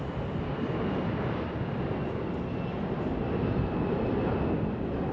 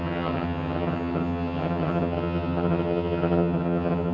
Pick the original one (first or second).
first